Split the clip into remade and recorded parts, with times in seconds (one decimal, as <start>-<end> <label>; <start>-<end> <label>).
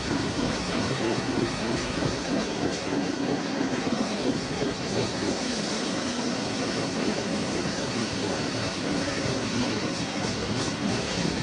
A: 0.0-11.4 remade